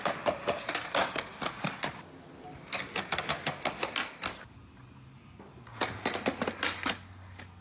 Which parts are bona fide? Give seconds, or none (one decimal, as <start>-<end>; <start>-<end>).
0.0-7.6